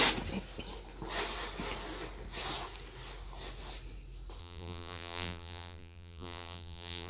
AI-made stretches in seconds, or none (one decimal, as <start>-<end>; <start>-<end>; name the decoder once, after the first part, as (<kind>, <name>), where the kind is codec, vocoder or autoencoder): 4.4-7.1 (vocoder, BigVGAN v2)